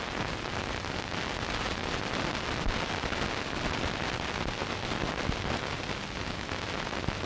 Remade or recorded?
recorded